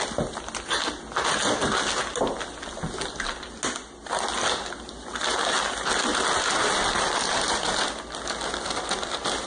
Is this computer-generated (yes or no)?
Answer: no